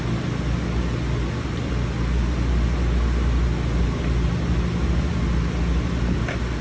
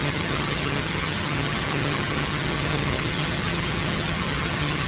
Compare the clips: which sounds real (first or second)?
first